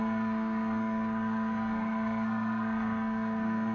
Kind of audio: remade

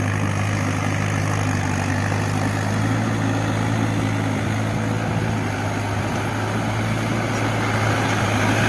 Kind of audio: recorded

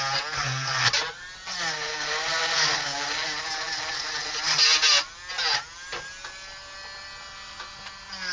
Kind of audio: recorded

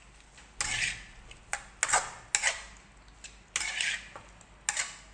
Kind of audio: recorded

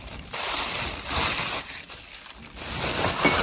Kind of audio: recorded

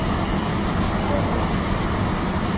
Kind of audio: recorded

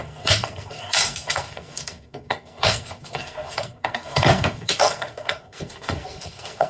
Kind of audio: remade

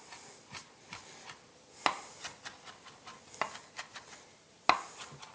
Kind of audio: recorded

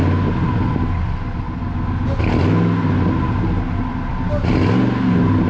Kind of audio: recorded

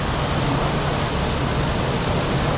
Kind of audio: recorded